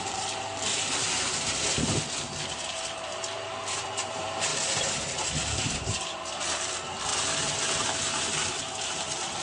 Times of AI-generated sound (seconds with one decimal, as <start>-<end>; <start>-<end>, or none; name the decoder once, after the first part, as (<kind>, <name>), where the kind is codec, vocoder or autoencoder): 0.0-0.7 (vocoder, BigVGAN v2); 2.5-7.1; 8.2-9.4